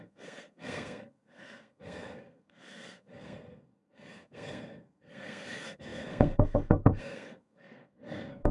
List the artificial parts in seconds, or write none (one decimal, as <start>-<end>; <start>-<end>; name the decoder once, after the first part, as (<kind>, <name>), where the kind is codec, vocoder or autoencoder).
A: 0.0-8.5 (codec, SNAC)